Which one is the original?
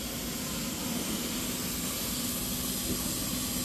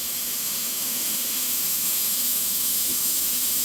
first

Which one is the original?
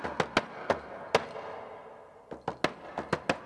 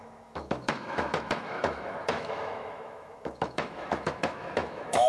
first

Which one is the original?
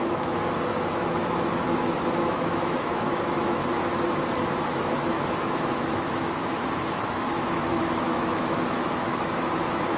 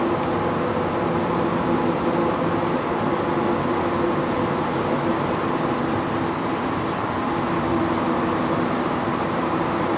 second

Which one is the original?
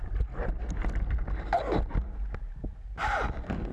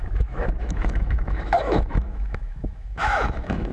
first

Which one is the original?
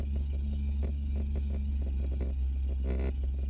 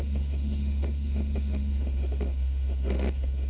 first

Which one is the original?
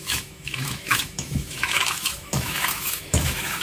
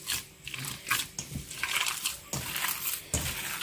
second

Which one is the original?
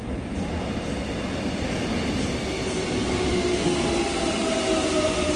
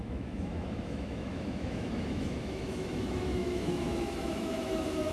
first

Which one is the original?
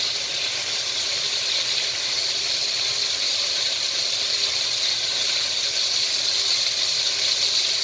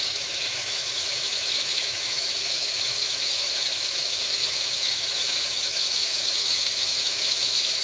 first